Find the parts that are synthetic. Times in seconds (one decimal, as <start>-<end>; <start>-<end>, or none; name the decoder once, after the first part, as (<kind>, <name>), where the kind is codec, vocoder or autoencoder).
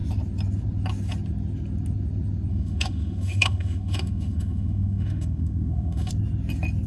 2.5-6.1 (autoencoder, DAC-VAE)